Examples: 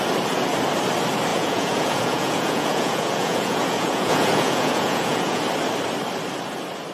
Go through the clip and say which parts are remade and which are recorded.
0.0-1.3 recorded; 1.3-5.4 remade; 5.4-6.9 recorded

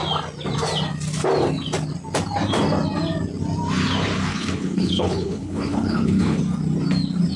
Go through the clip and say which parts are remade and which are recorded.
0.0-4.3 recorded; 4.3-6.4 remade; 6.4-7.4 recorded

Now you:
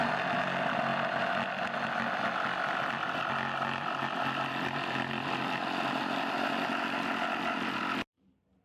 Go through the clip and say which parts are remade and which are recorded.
0.0-8.6 recorded

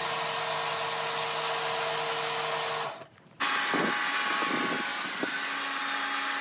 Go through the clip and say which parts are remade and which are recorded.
0.0-6.4 recorded